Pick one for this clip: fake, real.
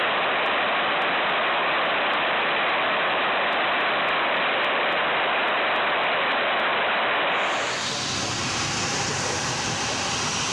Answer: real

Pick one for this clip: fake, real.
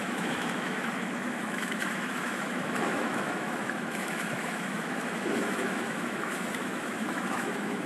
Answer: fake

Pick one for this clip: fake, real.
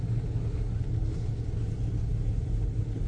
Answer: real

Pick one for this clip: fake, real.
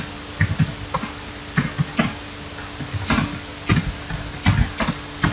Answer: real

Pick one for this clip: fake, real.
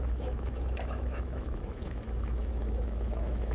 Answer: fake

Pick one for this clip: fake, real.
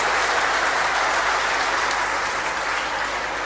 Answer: real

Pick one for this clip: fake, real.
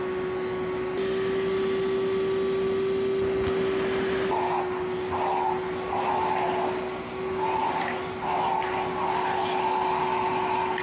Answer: real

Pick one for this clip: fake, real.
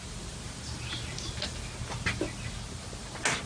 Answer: real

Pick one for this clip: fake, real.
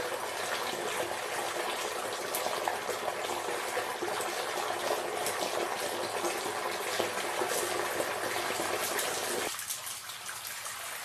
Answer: real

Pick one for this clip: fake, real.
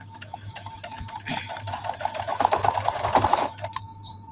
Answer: fake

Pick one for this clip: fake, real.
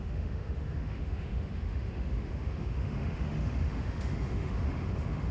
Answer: fake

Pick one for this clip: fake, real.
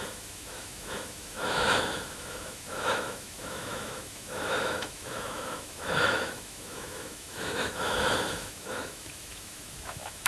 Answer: fake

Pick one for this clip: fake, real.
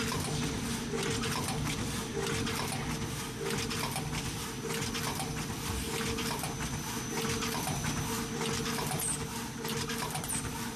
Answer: real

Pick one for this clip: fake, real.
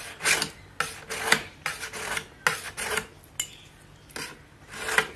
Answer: real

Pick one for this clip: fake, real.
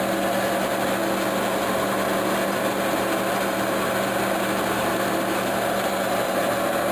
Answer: real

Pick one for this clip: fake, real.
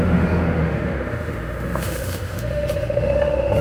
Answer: fake